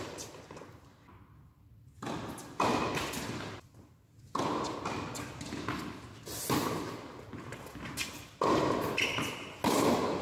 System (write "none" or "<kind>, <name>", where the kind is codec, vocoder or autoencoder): none